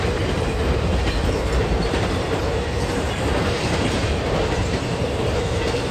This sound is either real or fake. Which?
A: fake